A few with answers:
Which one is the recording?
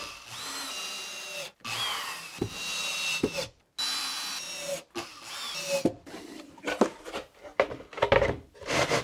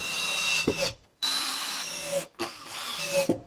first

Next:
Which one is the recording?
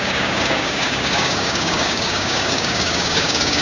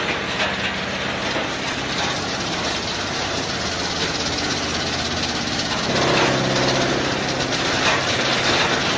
second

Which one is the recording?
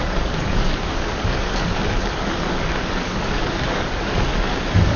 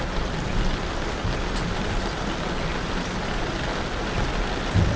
second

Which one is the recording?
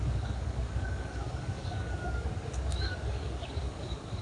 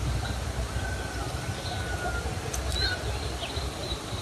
second